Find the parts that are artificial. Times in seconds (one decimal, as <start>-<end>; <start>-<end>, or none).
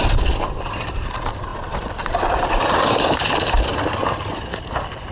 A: 0.0-3.7; 4.6-5.1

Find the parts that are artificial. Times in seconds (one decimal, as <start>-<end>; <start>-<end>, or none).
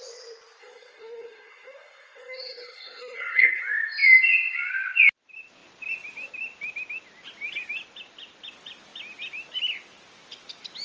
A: 0.6-3.6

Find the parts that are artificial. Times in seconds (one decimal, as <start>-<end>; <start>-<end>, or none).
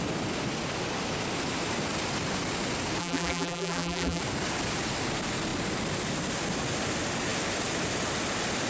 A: 3.0-4.2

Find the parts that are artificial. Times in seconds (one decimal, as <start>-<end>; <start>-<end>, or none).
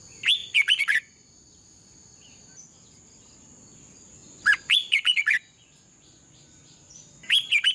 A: 0.4-1.3; 4.2-6.9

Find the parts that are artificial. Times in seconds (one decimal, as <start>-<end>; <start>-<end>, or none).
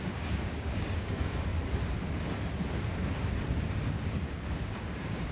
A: 0.0-1.5; 4.6-5.3